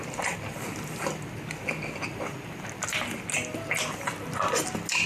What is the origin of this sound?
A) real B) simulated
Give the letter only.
A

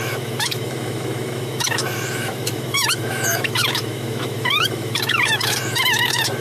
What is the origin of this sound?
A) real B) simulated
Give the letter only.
B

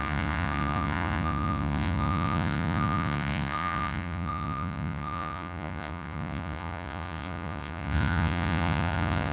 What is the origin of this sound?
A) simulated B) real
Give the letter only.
A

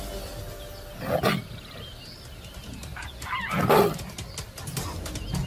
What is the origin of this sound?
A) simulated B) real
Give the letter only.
B